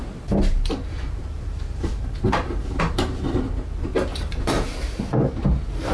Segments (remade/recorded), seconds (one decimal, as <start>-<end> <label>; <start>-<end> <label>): 0.0-3.5 remade; 3.5-4.1 recorded; 4.1-5.0 remade; 5.0-5.9 recorded